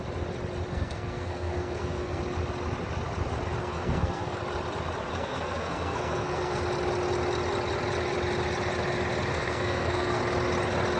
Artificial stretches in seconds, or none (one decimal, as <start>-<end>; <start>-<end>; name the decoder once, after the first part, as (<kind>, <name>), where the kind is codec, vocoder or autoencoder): 0.7-2.2 (codec, SNAC); 3.6-4.4; 5.1-6.6; 9.3-10.2